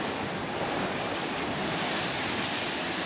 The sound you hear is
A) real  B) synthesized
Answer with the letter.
A